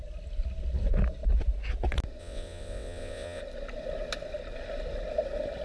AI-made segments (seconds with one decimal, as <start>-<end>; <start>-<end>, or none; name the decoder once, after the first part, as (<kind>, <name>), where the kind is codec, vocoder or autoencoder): 2.2-3.4 (vocoder, WaveNeXt)